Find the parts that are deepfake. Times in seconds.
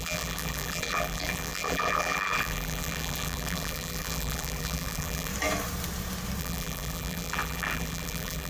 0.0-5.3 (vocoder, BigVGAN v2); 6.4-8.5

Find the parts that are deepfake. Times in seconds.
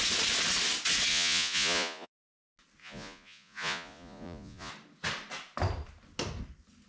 1.1-2.1 (vocoder, Vocos); 2.8-4.7